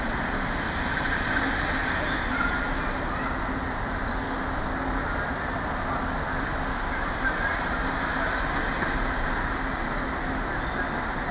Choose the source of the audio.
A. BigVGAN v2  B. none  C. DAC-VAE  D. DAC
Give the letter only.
B